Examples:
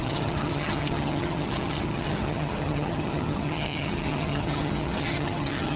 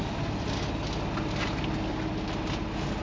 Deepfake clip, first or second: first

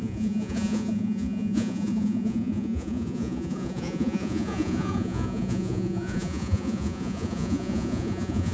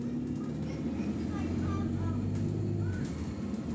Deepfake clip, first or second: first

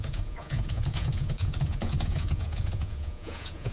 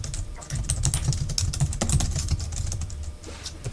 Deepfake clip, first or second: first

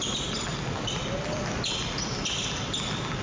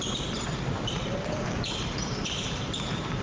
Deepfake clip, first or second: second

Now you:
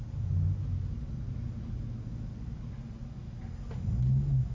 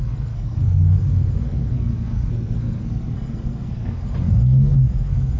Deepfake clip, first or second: second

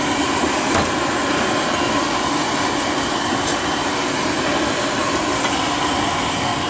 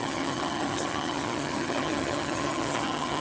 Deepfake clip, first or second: second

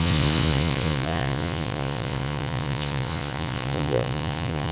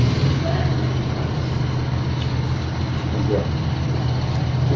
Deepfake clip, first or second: first